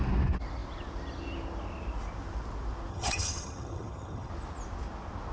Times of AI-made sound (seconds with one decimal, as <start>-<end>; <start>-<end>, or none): 2.9-4.3